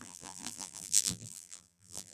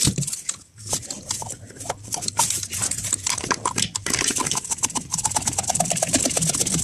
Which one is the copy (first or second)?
first